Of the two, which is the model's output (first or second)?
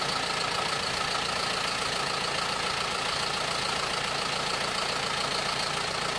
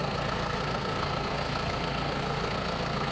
second